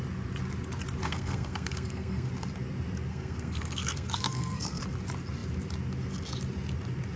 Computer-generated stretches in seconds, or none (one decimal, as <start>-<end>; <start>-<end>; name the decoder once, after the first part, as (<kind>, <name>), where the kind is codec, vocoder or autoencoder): 1.0-2.3 (codec, SNAC); 3.1-4.8